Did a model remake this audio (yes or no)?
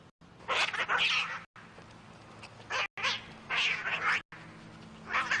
no